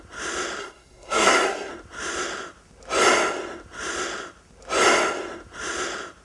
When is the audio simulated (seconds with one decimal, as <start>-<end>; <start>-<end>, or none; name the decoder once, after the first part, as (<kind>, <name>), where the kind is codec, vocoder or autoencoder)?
0.6-1.7 (codec, SNAC)